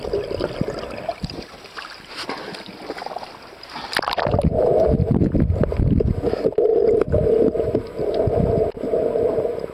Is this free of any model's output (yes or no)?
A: yes